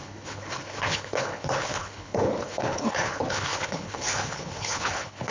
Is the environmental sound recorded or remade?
remade